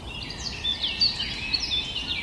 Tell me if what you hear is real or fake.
real